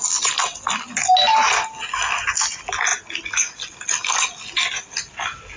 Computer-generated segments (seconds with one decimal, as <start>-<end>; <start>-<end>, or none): none

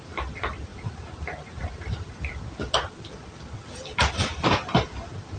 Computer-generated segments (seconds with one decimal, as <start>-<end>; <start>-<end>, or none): 0.7-2.4

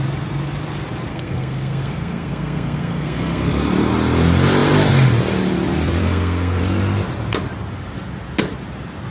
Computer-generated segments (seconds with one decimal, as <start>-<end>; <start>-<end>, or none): 1.1-3.5; 6.0-6.6